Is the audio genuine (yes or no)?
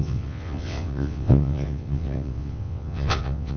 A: no